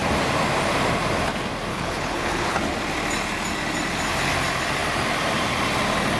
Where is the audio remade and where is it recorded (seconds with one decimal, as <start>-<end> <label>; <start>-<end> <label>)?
0.0-1.7 recorded; 1.7-2.6 remade; 2.6-6.2 recorded